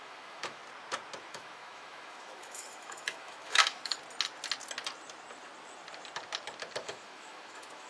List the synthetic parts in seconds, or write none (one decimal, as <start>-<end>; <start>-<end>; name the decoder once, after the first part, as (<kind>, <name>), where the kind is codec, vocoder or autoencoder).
0.0-0.6 (autoencoder, DAC-VAE); 1.2-3.9; 6.8-7.9

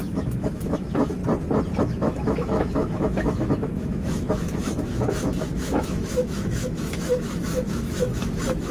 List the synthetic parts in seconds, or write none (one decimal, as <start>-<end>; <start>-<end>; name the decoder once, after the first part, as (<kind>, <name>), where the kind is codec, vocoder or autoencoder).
0.0-1.2 (autoencoder, DAC-VAE); 1.8-8.7

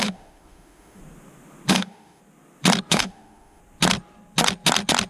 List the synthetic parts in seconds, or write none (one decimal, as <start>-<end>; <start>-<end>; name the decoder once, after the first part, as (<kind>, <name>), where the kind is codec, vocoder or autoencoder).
0.0-1.0 (autoencoder, DAC-VAE); 1.7-2.2; 2.9-3.6

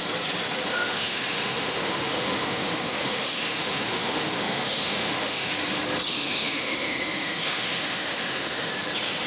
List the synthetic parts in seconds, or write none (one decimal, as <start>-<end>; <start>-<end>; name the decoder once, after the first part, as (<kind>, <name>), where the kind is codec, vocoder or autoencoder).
0.7-5.5 (autoencoder, DAC-VAE); 6.1-8.7

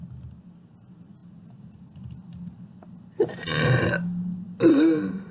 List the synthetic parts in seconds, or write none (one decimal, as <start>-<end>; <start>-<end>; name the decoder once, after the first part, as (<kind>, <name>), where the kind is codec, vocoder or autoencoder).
4.7-5.3 (autoencoder, DAC-VAE)

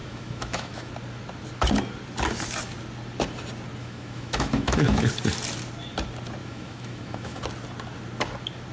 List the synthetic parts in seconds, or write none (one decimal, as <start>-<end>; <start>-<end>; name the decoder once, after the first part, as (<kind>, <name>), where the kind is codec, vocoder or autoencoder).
0.0-0.9 (autoencoder, DAC-VAE); 3.8-5.1; 6.4-7.4

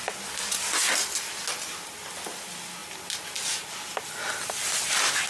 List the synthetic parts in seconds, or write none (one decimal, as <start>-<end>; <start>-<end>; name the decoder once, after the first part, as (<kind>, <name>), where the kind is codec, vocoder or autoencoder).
none

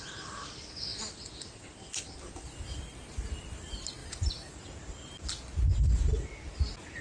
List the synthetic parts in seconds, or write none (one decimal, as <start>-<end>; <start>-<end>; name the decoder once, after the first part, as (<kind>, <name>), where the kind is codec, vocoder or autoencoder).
none